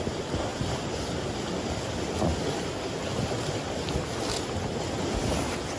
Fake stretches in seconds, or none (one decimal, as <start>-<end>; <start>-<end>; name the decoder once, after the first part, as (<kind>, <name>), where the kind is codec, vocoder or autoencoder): none